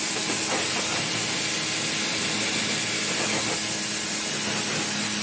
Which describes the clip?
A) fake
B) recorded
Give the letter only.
B